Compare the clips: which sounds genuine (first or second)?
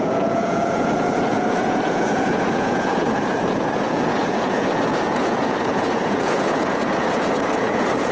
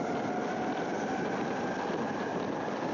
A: second